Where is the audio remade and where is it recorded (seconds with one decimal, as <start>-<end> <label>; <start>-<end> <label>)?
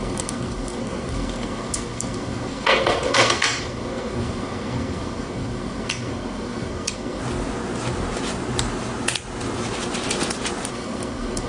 0.0-7.2 remade; 7.2-10.7 recorded; 10.7-11.5 remade